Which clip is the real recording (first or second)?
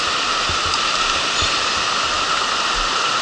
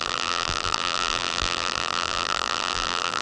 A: first